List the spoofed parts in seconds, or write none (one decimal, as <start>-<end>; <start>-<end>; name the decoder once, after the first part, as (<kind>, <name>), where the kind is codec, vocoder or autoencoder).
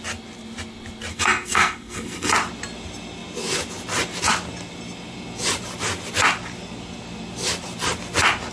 1.1-2.3 (codec, SNAC)